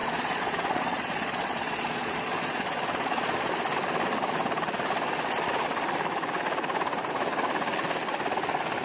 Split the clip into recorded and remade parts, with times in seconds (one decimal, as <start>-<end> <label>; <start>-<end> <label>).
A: 0.0-3.5 remade; 3.5-8.8 recorded